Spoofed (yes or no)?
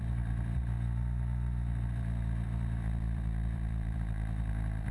yes